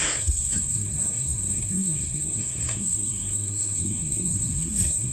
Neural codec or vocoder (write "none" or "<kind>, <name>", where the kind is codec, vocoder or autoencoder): codec, SNAC